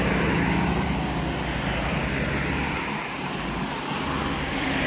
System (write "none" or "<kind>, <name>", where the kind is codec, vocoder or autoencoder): none